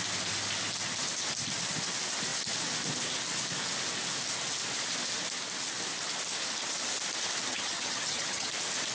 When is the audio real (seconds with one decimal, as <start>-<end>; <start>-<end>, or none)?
0.0-7.5; 8.5-8.9